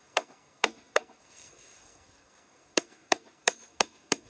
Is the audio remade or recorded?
remade